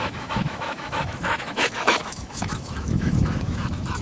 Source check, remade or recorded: remade